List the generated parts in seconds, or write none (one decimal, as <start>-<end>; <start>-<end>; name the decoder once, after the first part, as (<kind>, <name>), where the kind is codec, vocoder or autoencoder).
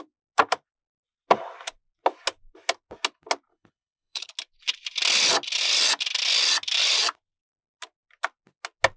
3.5-4.3 (codec, HILCodec)